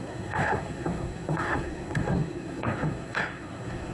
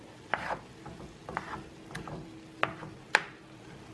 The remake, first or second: first